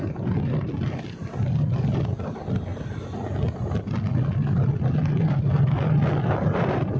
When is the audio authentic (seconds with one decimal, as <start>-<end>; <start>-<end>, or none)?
0.0-7.0